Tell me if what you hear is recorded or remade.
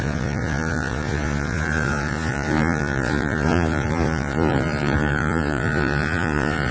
remade